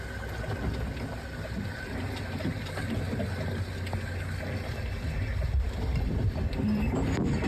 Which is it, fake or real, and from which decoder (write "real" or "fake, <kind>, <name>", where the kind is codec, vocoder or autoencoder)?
real